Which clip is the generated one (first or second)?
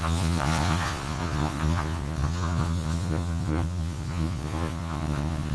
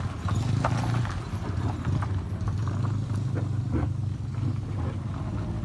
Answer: first